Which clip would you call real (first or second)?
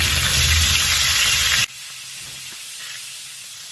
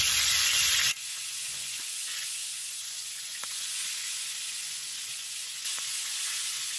first